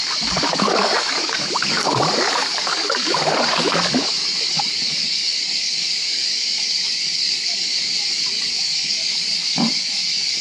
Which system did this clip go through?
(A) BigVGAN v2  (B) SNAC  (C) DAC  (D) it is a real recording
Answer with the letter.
C